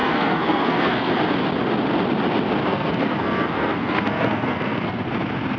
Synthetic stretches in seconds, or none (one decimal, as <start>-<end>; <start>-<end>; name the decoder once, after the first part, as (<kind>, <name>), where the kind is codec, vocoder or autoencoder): 0.0-1.1 (codec, SNAC); 2.7-5.1